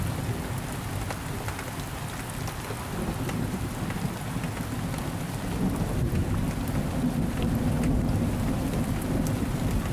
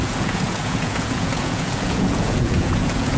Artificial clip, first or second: second